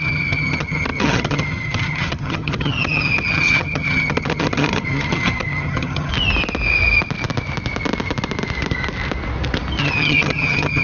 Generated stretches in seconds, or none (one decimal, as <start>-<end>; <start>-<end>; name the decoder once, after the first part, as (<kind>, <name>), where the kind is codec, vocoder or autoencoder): 0.0-6.1 (vocoder, HiFi-GAN); 9.8-10.8